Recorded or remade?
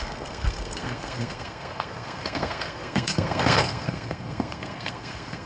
remade